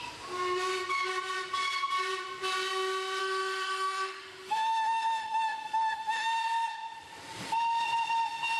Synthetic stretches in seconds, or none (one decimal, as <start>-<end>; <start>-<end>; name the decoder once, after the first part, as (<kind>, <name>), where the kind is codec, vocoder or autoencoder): 3.2-6.4 (autoencoder, DAC-VAE)